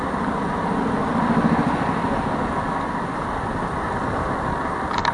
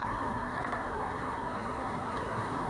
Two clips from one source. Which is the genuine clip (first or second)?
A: first